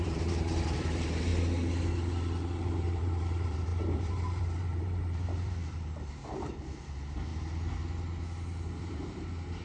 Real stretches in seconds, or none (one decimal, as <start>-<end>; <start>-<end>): 1.3-2.6; 7.3-8.8